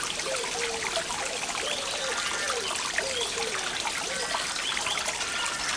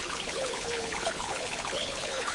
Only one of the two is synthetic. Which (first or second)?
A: second